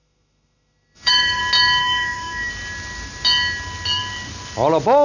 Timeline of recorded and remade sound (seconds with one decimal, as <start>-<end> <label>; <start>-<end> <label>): 0.0-1.4 remade; 1.4-1.8 recorded; 1.8-2.5 remade; 2.5-5.0 recorded